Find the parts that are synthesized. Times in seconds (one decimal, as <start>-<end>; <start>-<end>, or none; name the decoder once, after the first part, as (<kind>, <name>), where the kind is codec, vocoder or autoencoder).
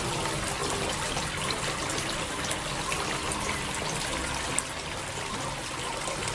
none